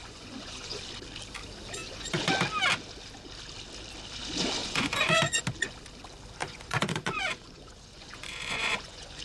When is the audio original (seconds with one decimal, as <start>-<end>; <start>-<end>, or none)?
0.8-1.8; 2.3-4.6; 5.4-6.4